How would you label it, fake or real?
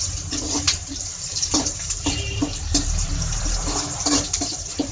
fake